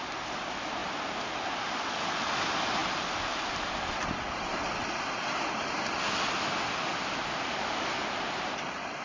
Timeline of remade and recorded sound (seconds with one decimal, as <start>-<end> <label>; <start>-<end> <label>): 0.0-9.0 recorded